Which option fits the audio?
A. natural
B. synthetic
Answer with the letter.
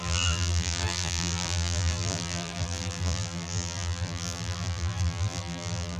B